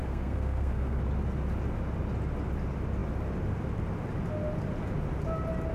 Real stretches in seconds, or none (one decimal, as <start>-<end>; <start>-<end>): 1.0-5.7